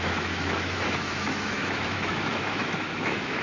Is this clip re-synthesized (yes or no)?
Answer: yes